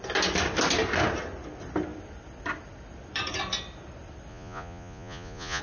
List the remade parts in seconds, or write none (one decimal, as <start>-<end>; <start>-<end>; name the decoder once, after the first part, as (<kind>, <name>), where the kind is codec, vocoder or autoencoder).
4.3-5.6 (vocoder, Vocos)